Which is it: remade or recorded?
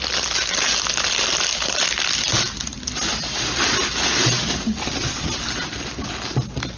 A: recorded